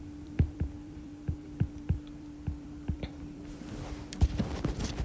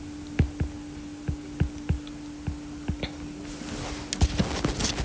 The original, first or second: second